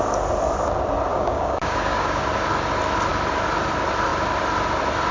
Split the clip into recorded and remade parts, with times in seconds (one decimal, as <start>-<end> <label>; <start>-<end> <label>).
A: 0.0-1.1 recorded; 1.1-2.2 remade; 2.2-5.1 recorded